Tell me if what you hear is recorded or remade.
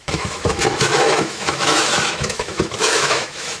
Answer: remade